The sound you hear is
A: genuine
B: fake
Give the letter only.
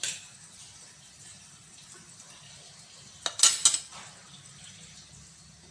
A